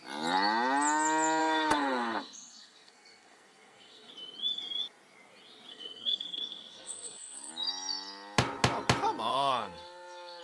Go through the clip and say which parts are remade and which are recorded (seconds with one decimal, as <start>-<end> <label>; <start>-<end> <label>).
0.0-1.4 recorded; 1.4-4.1 remade; 4.1-5.7 recorded; 5.7-7.5 remade; 7.5-9.3 recorded; 9.3-10.4 remade